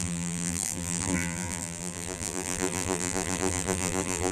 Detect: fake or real fake